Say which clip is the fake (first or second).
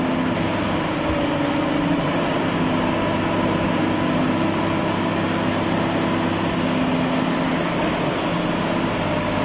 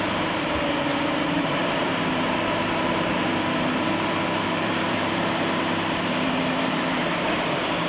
second